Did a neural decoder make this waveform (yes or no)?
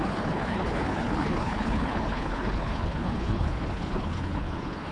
yes